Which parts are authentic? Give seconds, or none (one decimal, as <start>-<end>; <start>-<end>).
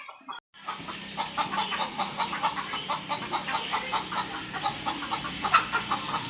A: 0.0-1.6; 2.5-4.7; 5.2-6.3